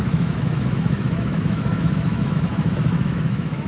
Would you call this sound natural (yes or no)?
no